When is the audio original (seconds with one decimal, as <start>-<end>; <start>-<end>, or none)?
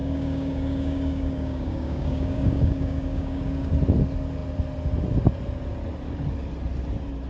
3.7-7.3